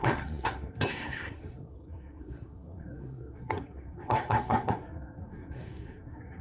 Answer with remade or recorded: remade